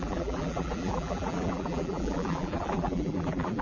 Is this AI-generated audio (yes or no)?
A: yes